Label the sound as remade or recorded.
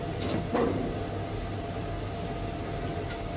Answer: recorded